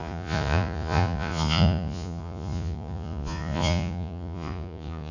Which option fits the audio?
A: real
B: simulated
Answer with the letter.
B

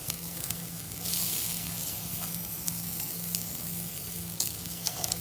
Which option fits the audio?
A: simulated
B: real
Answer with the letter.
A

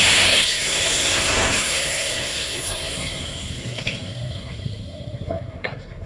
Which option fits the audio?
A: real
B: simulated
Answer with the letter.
B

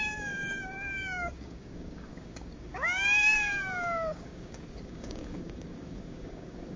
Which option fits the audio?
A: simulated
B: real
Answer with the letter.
A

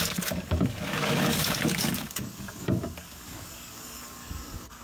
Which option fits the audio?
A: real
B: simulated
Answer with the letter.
B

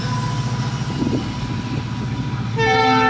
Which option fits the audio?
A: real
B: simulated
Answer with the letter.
A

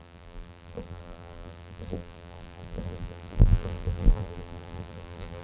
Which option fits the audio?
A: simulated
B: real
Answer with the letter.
A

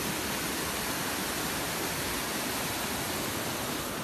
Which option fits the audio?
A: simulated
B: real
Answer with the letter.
B